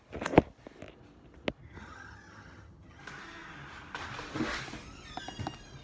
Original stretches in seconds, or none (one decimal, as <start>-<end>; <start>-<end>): 0.0-1.6; 3.0-5.8